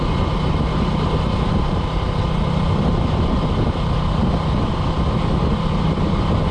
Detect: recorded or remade recorded